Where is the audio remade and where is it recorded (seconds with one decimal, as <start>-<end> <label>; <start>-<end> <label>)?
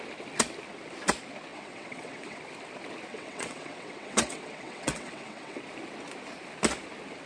0.0-1.5 recorded; 1.5-2.4 remade; 2.4-3.1 recorded; 3.1-5.6 remade; 5.6-7.3 recorded